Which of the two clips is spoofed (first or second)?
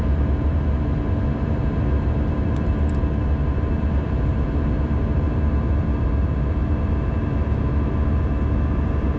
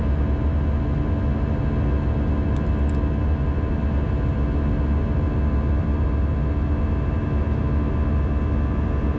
first